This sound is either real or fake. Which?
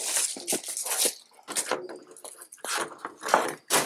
real